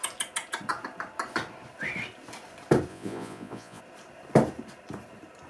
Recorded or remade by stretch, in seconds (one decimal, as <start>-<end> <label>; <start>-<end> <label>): 0.0-2.9 recorded; 2.9-3.8 remade; 3.8-5.5 recorded